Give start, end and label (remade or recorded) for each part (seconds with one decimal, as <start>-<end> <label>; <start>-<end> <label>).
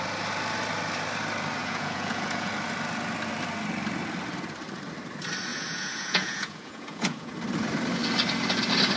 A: 0.0-1.6 recorded; 1.6-2.5 remade; 2.5-5.5 recorded; 5.5-7.4 remade; 7.4-9.0 recorded